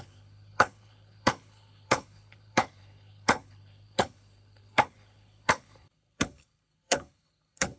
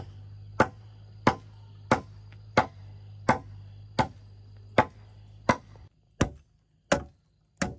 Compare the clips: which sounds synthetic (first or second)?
first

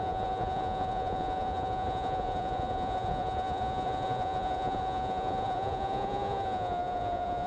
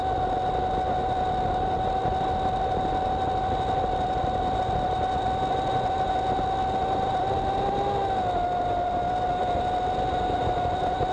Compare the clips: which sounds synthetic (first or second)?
first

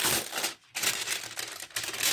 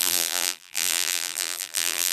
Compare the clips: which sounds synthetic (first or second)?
second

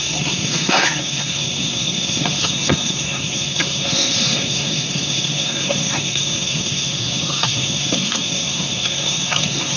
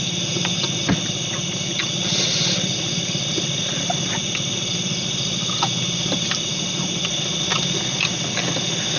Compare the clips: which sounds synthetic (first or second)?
first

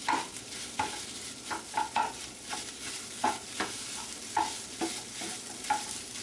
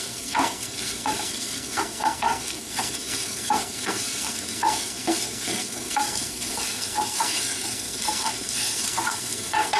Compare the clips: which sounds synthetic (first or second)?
second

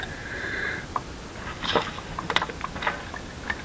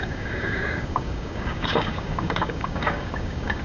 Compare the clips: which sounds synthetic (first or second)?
second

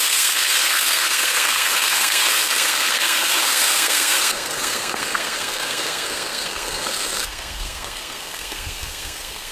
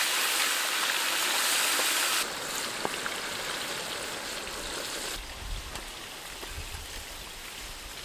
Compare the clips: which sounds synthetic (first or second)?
first